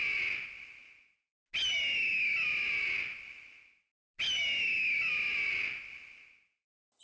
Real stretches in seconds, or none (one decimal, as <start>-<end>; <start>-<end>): 0.0-7.0